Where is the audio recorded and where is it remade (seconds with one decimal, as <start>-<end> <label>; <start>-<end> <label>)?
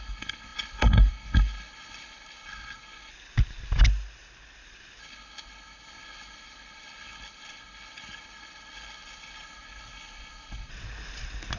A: 0.0-3.1 remade; 3.1-5.0 recorded; 5.0-10.7 remade; 10.7-11.6 recorded